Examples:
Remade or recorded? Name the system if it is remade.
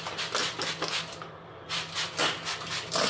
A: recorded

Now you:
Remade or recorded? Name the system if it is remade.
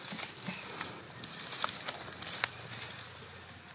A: recorded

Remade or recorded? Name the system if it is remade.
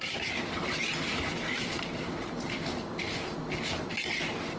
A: recorded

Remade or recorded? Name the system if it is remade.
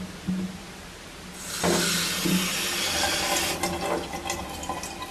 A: recorded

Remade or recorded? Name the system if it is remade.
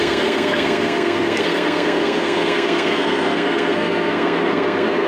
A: remade, codec, SNAC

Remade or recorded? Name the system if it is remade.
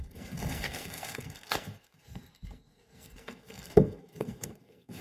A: remade, codec, SNAC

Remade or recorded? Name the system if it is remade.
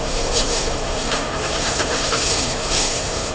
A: remade, codec, SNAC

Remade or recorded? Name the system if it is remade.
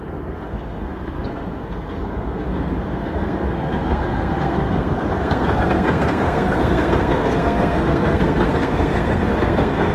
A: remade, codec, SNAC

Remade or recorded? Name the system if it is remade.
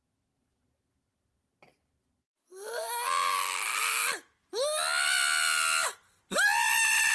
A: recorded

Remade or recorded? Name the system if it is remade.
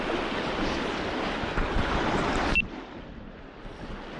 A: recorded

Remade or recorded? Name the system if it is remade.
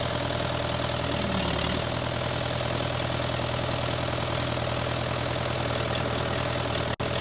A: recorded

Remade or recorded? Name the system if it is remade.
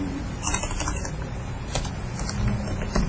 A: recorded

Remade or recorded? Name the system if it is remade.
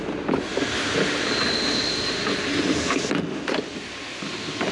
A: recorded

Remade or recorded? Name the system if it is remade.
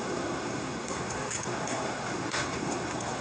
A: remade, codec, SNAC